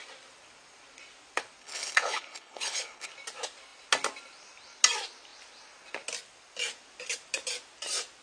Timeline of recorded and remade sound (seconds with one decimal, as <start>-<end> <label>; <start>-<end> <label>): 0.0-1.6 recorded; 1.6-3.1 remade; 3.1-8.2 recorded